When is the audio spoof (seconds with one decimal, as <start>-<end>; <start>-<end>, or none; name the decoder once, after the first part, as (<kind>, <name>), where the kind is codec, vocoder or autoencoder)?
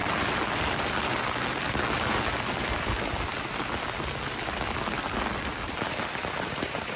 none